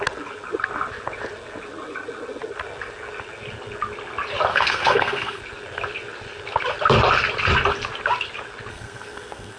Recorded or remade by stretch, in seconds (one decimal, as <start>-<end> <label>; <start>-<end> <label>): 0.0-4.5 recorded; 4.5-5.4 remade; 5.4-8.7 recorded; 8.7-9.6 remade

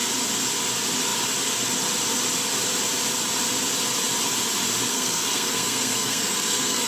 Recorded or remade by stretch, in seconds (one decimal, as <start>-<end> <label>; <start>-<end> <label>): 0.0-4.9 recorded; 4.9-6.9 remade

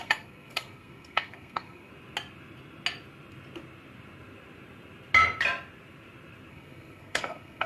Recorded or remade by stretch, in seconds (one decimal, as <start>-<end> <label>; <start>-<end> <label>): 0.0-1.9 remade; 1.9-6.5 recorded; 6.5-7.7 remade

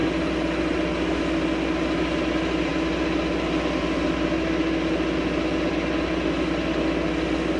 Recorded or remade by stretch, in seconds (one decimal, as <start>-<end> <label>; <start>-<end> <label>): 0.0-7.6 recorded

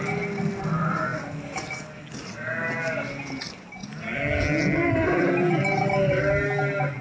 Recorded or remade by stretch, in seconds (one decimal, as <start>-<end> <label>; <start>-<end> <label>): 0.0-7.0 recorded

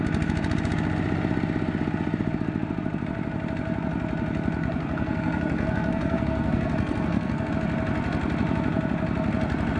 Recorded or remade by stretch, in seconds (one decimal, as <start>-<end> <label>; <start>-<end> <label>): 0.0-4.6 recorded; 4.6-7.5 remade; 7.5-9.8 recorded

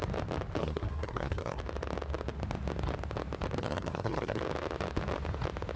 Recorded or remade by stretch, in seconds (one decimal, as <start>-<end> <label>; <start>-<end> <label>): 0.0-0.6 recorded; 0.6-1.6 remade; 1.6-3.6 recorded; 3.6-4.4 remade; 4.4-5.8 recorded